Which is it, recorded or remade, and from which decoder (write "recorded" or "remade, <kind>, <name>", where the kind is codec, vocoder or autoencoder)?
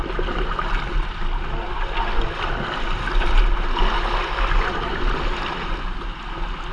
recorded